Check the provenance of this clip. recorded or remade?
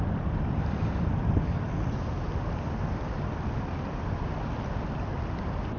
recorded